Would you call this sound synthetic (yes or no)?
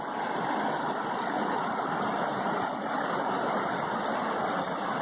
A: no